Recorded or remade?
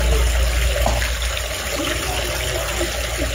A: recorded